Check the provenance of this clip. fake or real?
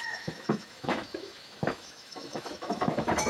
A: fake